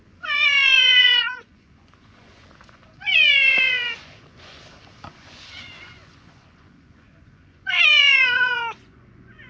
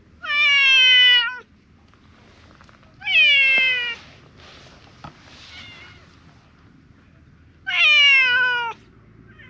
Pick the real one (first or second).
second